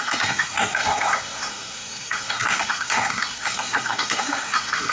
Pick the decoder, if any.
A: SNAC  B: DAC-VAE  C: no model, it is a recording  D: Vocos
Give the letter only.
A